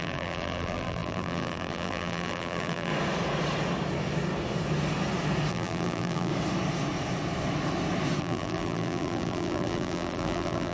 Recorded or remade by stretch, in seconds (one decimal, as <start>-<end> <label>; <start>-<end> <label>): 0.0-2.9 remade; 2.9-5.5 recorded; 5.5-6.3 remade; 6.3-8.2 recorded; 8.2-10.7 remade